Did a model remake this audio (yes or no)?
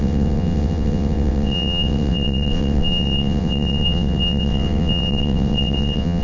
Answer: yes